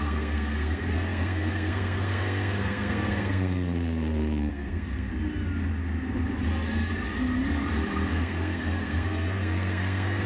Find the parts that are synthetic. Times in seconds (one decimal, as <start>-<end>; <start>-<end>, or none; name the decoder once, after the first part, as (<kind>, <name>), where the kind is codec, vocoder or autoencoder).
0.0-5.1 (codec, SNAC); 8.1-10.3